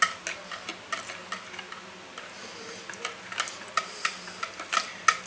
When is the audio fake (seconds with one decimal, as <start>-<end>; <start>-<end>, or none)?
none